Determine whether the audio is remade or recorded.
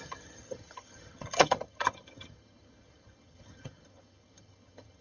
remade